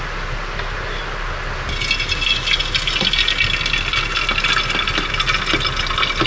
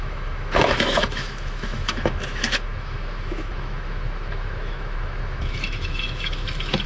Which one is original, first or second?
first